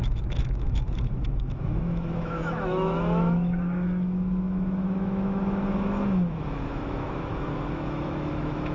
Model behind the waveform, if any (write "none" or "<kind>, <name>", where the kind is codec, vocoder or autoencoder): autoencoder, DAC-VAE